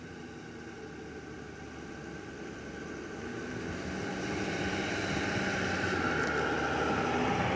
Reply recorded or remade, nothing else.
recorded